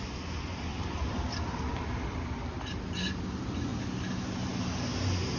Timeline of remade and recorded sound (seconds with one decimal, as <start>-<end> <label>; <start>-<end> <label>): 0.0-5.4 recorded

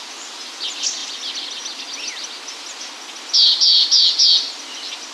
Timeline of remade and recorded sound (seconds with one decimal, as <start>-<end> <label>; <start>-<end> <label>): 0.0-5.1 recorded